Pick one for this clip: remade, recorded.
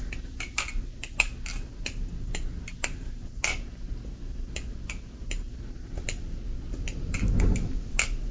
recorded